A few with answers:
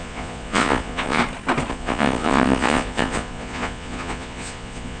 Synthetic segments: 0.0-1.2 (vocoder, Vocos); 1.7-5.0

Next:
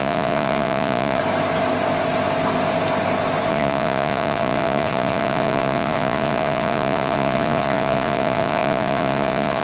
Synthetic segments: 0.0-1.2 (vocoder, Vocos); 3.5-9.6